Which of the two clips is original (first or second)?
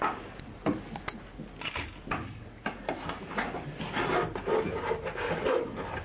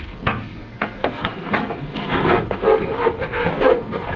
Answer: first